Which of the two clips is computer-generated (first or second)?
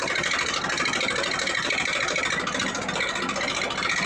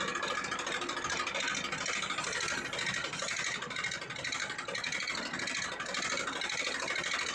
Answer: first